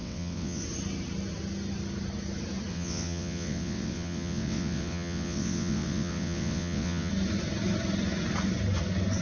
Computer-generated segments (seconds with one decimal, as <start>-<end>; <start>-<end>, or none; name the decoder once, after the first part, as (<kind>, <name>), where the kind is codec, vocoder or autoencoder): 0.0-0.6 (vocoder, WaveNeXt); 2.7-7.1